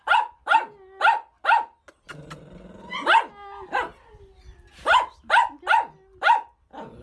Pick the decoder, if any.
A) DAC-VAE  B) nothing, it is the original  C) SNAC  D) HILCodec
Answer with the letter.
B